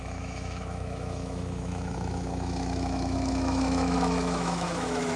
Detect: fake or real fake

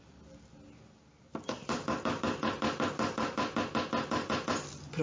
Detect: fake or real real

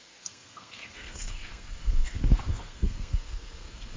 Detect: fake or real fake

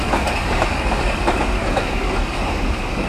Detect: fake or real fake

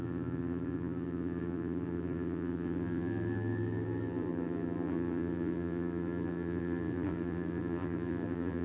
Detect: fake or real fake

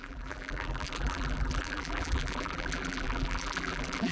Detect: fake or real fake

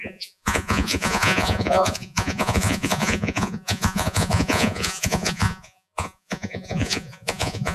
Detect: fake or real fake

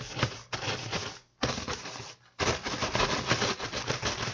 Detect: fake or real real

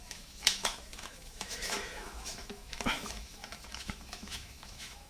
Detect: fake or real fake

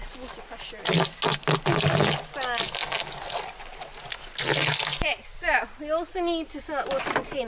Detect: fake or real real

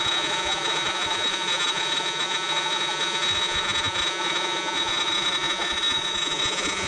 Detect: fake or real fake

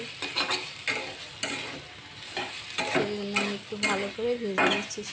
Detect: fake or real real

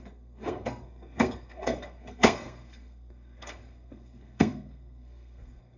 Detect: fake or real fake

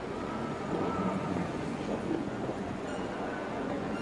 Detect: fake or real fake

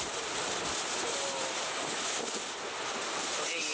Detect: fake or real real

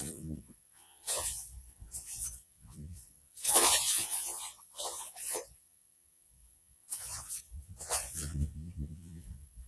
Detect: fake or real fake